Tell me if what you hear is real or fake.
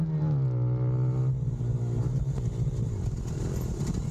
real